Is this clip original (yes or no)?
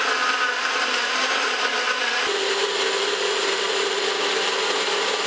yes